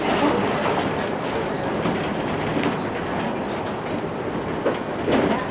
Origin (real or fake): real